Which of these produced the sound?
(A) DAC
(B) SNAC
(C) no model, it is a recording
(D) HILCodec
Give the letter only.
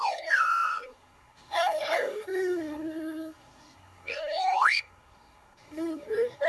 B